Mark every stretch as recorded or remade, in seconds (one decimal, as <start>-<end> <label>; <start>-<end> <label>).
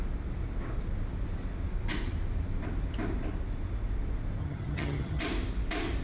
0.0-4.4 recorded; 4.4-5.2 remade; 5.2-6.0 recorded